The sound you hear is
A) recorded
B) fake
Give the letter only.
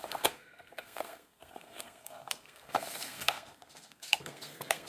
B